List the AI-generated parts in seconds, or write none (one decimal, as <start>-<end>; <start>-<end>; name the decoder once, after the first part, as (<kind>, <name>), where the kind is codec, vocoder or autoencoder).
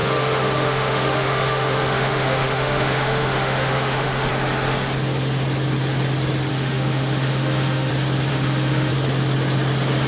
0.0-4.3 (autoencoder, DAC-VAE); 6.5-7.9; 8.3-8.9